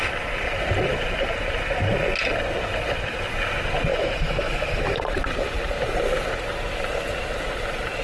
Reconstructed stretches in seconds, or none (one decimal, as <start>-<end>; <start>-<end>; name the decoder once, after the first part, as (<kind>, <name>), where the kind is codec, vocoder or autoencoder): 3.9-5.0 (autoencoder, DAC-VAE)